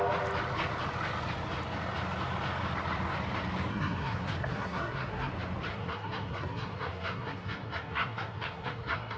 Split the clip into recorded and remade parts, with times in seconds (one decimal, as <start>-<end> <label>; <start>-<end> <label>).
0.0-3.7 recorded; 3.7-5.3 remade; 5.3-5.7 recorded; 5.7-9.2 remade